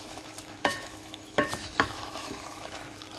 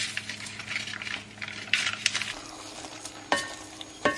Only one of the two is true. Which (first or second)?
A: second